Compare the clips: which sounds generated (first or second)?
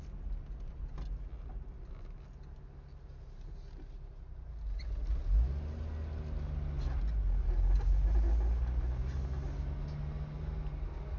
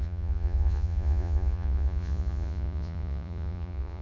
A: second